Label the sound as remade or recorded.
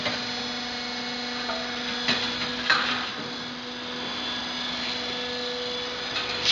recorded